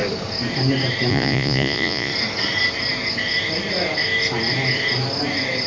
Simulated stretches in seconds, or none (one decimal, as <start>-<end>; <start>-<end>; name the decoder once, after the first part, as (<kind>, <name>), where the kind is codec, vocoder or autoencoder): 1.1-2.1 (vocoder, Vocos)